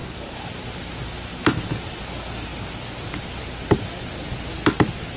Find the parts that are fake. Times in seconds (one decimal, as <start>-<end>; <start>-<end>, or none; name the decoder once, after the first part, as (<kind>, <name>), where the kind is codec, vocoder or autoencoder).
0.0-0.5 (vocoder, BigVGAN v2); 1.3-2.0